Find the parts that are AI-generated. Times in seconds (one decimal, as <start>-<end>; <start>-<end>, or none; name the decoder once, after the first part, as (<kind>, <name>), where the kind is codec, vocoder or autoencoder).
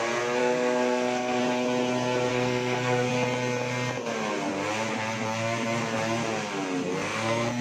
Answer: 0.4-1.4 (codec, SNAC); 2.3-3.1; 6.9-7.6